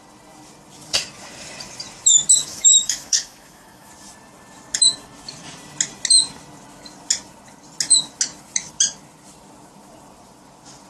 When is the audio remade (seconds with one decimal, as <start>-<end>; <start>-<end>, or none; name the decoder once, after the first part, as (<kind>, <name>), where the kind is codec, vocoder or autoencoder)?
2.4-3.9 (autoencoder, DAC-VAE)